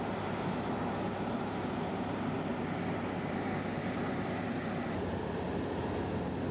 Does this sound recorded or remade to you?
recorded